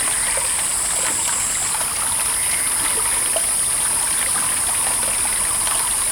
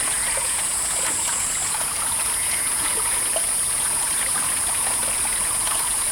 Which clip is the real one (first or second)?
first